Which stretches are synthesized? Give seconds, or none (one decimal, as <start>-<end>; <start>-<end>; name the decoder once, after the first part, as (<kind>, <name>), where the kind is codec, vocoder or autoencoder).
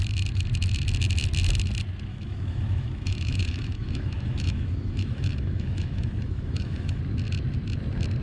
2.1-7.0 (autoencoder, DAC-VAE)